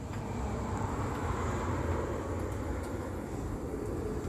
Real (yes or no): yes